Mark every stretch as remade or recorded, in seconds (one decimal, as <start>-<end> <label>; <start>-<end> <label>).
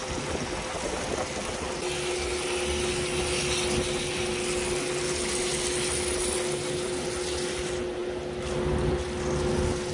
0.0-9.9 recorded